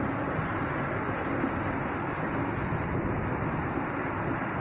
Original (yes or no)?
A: yes